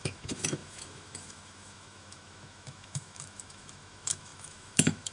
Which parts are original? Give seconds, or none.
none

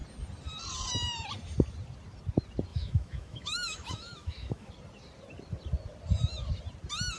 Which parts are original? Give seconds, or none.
0.0-2.7; 4.7-7.2

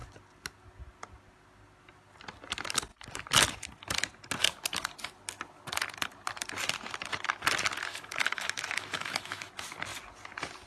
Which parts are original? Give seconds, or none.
0.0-7.9; 9.5-10.7

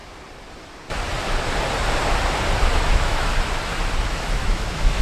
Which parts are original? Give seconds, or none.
0.0-2.9; 3.3-4.1

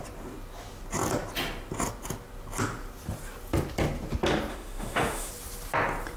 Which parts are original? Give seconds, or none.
0.0-4.5; 5.3-6.2

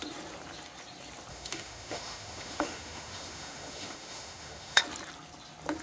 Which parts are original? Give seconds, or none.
0.0-1.3; 4.8-5.8